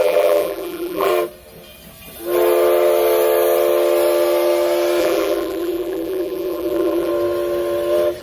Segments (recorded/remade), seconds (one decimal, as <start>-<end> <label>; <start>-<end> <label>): 0.0-1.1 remade; 1.1-5.0 recorded; 5.0-7.1 remade; 7.1-8.2 recorded